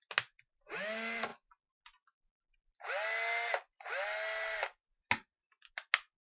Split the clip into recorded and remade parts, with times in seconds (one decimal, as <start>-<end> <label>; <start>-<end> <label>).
0.0-6.3 recorded